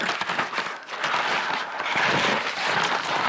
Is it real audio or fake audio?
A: real